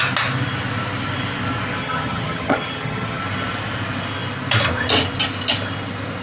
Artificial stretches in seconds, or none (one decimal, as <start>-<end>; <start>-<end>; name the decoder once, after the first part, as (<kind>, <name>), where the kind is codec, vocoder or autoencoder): 1.8-3.2 (vocoder, HiFi-GAN)